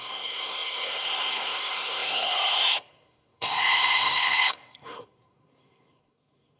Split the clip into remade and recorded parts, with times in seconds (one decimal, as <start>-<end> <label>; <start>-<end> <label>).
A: 0.0-6.6 remade